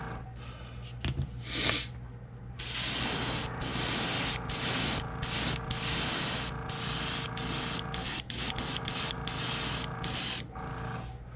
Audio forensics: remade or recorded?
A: recorded